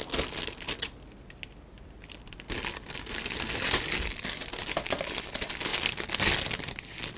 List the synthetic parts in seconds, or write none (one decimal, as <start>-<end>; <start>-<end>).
none